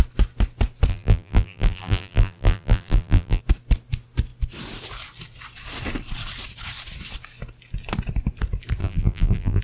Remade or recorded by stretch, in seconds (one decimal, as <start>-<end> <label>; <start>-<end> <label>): 0.0-0.9 recorded; 0.9-3.4 remade; 3.4-8.8 recorded; 8.8-9.6 remade

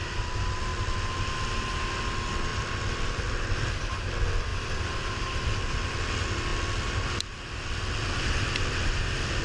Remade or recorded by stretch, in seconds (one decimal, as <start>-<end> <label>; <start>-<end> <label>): 0.0-2.5 recorded; 2.5-3.7 remade; 3.7-4.5 recorded; 4.5-5.0 remade; 5.0-9.4 recorded

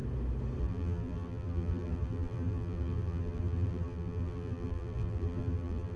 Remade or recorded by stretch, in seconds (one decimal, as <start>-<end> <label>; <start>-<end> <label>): 0.0-0.6 recorded; 0.6-6.0 remade

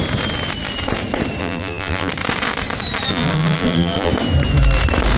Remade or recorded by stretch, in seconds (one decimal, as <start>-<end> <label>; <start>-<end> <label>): 0.0-1.4 recorded; 1.4-2.1 remade; 2.1-3.1 recorded; 3.1-4.1 remade; 4.1-5.2 recorded

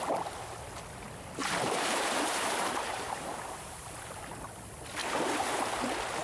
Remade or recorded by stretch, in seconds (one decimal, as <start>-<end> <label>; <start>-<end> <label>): 0.0-1.4 recorded; 1.4-4.2 remade; 4.2-5.0 recorded; 5.0-5.8 remade; 5.8-6.2 recorded

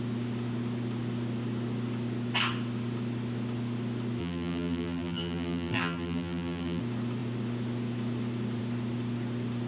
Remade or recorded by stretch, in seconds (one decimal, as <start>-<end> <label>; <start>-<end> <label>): 0.0-4.2 recorded; 4.2-6.8 remade; 6.8-9.7 recorded

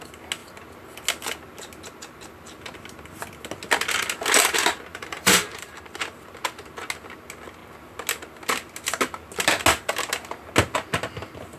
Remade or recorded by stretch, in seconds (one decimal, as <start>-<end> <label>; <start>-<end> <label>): 0.0-4.9 recorded; 4.9-5.8 remade; 5.8-11.6 recorded

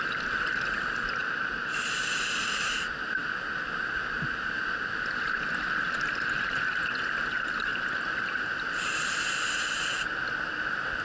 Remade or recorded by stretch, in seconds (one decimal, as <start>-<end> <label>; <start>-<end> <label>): 0.0-1.2 recorded; 1.2-2.7 remade; 2.7-3.2 recorded; 3.2-6.7 remade; 6.7-7.7 recorded; 7.7-9.3 remade; 9.3-11.0 recorded